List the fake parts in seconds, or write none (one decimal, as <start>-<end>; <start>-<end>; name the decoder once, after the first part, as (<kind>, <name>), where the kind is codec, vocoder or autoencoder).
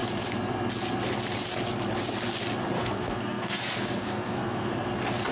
2.8-3.6 (codec, SNAC); 4.0-4.7